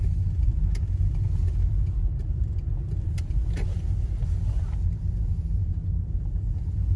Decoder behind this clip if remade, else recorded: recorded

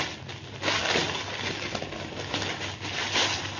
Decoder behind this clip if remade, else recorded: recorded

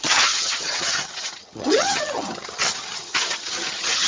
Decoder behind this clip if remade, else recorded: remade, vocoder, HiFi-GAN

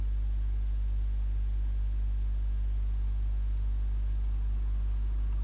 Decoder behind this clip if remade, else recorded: recorded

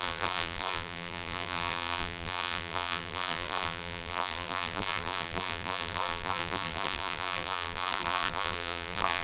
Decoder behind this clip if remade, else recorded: remade, vocoder, BigVGAN v2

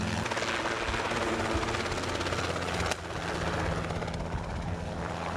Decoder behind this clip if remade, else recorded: recorded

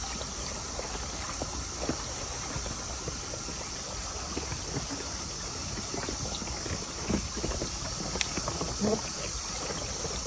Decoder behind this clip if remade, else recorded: recorded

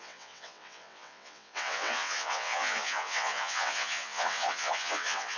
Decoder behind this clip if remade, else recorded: remade, vocoder, WaveNeXt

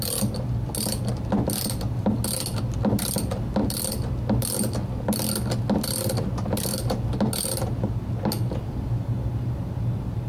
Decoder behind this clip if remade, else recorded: recorded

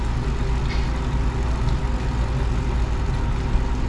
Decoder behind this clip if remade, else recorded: recorded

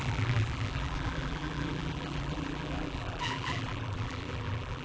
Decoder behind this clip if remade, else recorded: remade, vocoder, BigVGAN v2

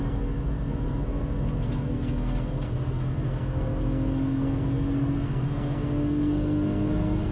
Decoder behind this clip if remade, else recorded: remade, codec, SNAC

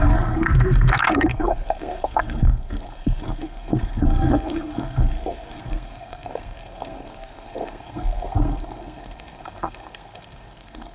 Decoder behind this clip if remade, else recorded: remade, codec, SNAC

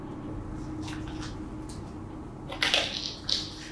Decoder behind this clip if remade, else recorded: recorded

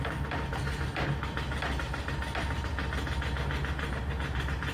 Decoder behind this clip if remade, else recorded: recorded